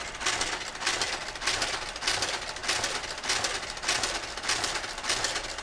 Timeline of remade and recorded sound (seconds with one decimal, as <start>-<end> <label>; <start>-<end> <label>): 0.0-5.6 recorded